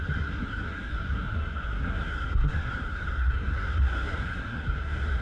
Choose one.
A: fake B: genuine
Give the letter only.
A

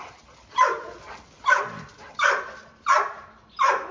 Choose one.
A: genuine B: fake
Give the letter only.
A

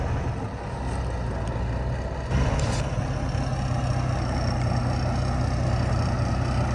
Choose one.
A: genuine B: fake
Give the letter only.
A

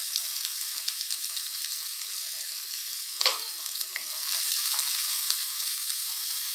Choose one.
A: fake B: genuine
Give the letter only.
A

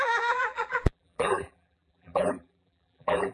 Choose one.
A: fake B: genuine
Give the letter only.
A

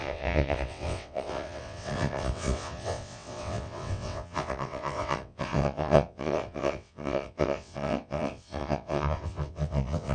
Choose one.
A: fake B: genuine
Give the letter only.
A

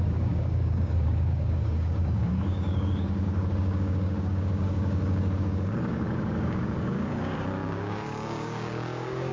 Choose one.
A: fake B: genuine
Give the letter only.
A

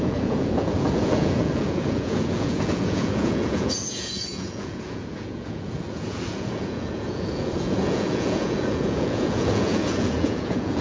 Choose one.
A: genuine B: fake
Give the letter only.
B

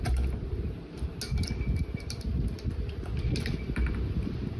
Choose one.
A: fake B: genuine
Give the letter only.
B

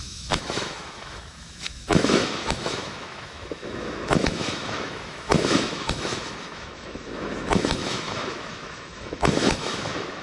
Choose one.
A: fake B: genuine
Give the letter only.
A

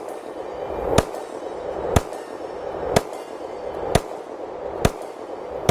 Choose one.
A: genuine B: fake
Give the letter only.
A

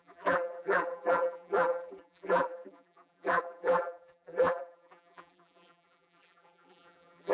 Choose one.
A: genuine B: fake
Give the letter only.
B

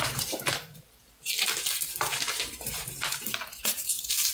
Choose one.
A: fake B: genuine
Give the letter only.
A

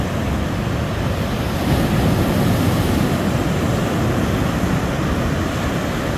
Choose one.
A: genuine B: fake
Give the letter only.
A